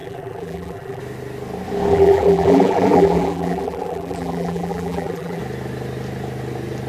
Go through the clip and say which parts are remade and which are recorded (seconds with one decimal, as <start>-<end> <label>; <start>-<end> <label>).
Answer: 0.0-1.0 remade; 1.0-1.9 recorded; 1.9-5.4 remade; 5.4-6.9 recorded